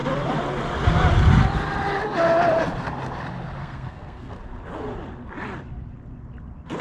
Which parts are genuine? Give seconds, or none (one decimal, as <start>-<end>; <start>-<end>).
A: 0.0-3.6; 4.3-6.8